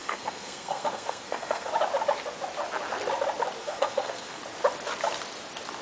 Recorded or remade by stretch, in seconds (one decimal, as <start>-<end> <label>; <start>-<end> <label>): 0.0-1.7 remade; 1.7-3.6 recorded; 3.6-4.4 remade; 4.4-5.8 recorded